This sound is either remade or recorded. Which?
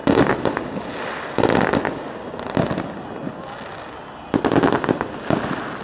recorded